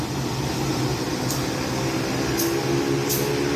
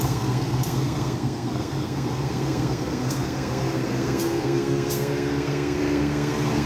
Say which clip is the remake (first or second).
second